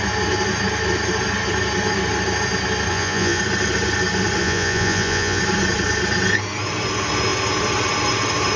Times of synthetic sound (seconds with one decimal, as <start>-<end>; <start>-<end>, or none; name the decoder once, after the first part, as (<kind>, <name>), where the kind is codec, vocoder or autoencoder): 2.9-3.4 (vocoder, Vocos); 4.4-5.4